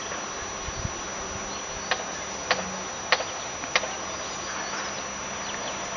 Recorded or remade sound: recorded